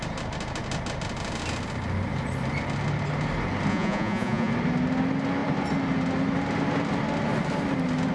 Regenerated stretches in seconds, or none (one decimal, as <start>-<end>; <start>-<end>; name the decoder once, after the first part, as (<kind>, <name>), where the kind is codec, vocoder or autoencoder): 3.7-4.5 (vocoder, Vocos)